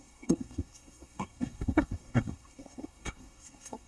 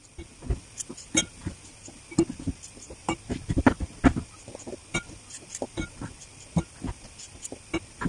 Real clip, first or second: second